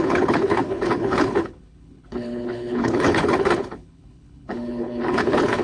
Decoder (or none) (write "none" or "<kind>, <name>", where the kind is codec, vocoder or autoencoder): codec, HILCodec